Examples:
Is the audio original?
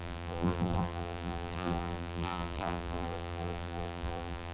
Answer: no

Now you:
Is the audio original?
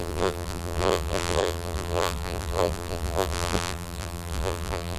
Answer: no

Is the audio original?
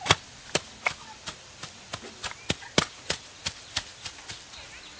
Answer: no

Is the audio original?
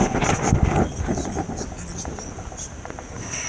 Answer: yes